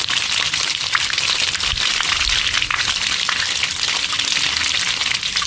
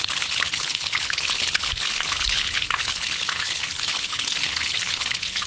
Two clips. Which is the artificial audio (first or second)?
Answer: second